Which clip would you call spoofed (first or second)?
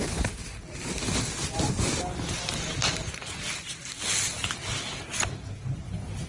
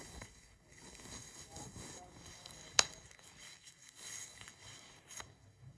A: second